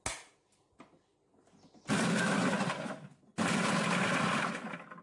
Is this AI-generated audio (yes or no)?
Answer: no